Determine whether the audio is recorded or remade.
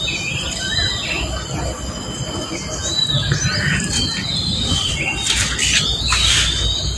recorded